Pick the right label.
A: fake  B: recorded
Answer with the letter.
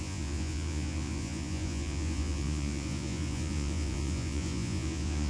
A